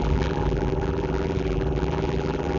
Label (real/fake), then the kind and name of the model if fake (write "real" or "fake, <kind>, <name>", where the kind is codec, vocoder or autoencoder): fake, vocoder, BigVGAN v2